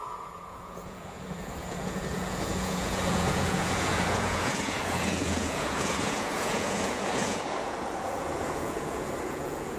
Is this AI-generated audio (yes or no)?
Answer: yes